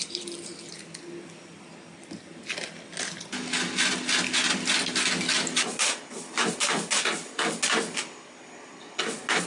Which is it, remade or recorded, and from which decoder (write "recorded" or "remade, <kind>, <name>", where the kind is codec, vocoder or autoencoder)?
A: recorded